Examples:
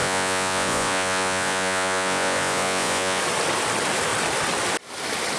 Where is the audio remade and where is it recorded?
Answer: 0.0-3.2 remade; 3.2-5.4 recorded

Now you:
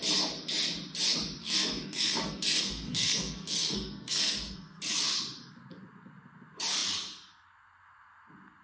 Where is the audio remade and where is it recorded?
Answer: 0.0-1.4 recorded; 1.4-4.8 remade; 4.8-8.6 recorded

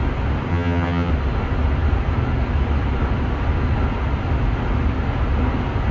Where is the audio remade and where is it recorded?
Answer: 0.0-0.5 recorded; 0.5-1.1 remade; 1.1-5.9 recorded